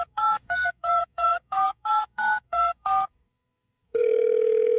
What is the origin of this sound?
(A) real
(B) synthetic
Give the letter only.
B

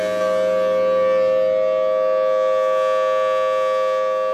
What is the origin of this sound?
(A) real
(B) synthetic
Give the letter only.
A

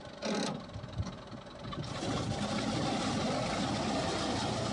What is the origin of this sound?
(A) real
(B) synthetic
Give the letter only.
A